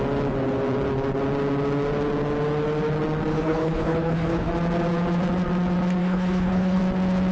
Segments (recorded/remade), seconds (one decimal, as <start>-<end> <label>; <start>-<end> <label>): 0.0-3.3 recorded; 3.3-4.5 remade; 4.5-6.0 recorded; 6.0-6.8 remade; 6.8-7.3 recorded